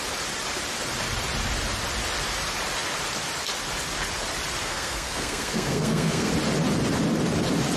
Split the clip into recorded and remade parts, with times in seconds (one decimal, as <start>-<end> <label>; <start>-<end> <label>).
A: 0.0-4.6 recorded; 4.6-6.3 remade; 6.3-7.8 recorded